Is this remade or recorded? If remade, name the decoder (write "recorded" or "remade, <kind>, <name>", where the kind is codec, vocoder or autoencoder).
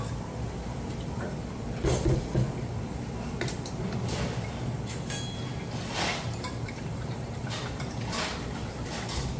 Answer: remade, vocoder, BigVGAN v2